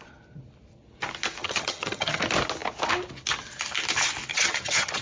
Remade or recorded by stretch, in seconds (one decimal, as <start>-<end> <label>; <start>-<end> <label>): 0.0-1.4 recorded; 1.4-2.2 remade; 2.2-4.3 recorded; 4.3-5.0 remade